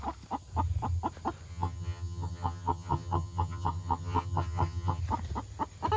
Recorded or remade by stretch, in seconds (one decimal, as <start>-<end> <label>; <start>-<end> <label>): 0.0-1.5 recorded; 1.5-5.0 remade; 5.0-6.0 recorded